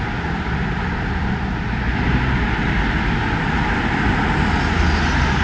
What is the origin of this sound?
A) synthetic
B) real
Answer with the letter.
B